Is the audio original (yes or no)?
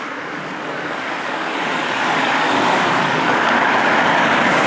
no